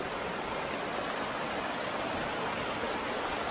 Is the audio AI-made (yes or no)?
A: no